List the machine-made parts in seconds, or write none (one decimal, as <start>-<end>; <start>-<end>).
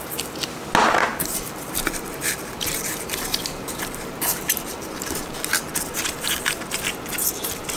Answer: 1.1-5.7